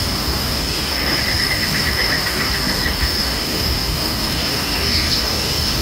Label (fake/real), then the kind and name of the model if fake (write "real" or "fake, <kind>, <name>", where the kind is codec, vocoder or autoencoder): fake, codec, DAC